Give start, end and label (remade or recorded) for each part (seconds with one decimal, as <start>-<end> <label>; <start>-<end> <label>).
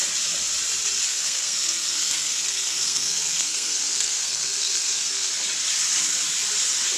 0.0-1.1 recorded; 1.1-5.3 remade; 5.3-7.0 recorded